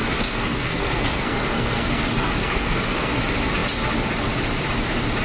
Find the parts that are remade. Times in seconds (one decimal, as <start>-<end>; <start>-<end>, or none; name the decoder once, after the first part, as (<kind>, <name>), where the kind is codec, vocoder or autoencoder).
0.0-3.1 (codec, SNAC)